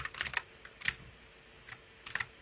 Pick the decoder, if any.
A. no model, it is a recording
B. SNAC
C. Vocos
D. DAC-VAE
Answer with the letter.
A